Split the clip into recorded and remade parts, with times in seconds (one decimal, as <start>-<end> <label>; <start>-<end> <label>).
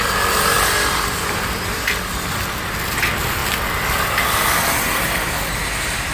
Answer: 0.0-6.1 recorded